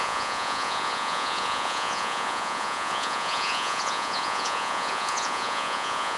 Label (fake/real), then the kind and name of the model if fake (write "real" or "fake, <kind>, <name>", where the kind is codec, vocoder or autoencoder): fake, vocoder, Vocos